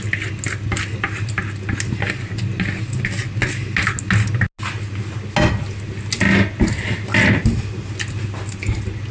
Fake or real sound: real